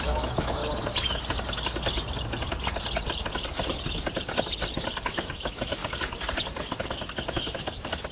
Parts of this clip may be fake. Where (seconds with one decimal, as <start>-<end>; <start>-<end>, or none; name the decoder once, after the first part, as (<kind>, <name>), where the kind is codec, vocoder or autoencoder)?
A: 0.0-0.6 (autoencoder, DAC-VAE); 5.1-5.8; 7.6-8.1